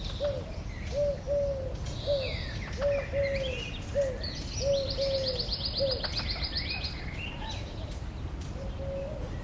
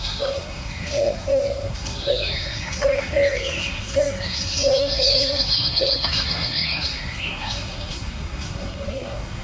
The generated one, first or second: second